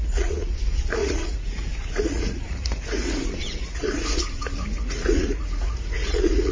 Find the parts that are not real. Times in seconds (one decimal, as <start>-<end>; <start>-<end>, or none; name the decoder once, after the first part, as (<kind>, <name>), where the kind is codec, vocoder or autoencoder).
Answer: 0.0-6.5 (vocoder, Vocos)